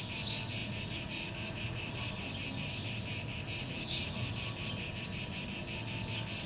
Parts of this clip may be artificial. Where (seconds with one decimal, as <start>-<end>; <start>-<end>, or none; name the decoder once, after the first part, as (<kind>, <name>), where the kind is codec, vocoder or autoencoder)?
0.6-2.0 (vocoder, Vocos); 3.6-4.3